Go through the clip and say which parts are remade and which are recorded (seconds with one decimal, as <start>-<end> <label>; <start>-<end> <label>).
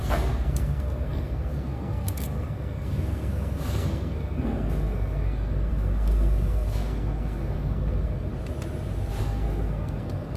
0.0-8.3 remade; 8.3-9.2 recorded; 9.2-10.4 remade